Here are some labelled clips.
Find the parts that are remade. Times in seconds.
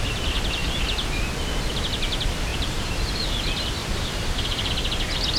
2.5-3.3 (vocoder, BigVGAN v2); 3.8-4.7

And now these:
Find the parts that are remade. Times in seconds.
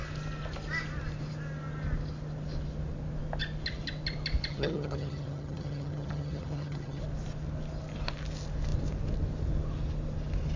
4.5-7.0 (vocoder, HiFi-GAN)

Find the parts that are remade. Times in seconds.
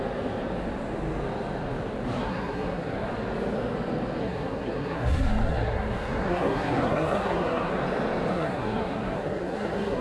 2.2-3.1 (codec, SNAC); 4.2-7.7; 8.3-10.0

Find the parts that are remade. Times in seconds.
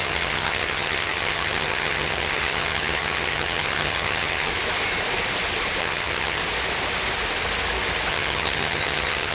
0.0-4.5 (vocoder, HiFi-GAN); 5.8-6.4; 8.1-9.3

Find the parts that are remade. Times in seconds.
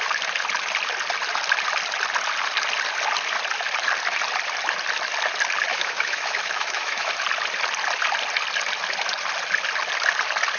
5.7-7.1 (autoencoder, DAC-VAE)